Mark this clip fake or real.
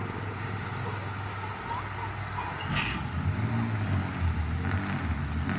real